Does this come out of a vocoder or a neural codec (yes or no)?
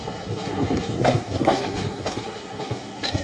yes